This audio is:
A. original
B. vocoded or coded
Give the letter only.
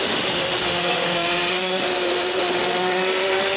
B